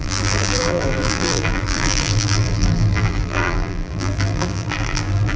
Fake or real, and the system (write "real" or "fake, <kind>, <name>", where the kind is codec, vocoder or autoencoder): fake, vocoder, BigVGAN v2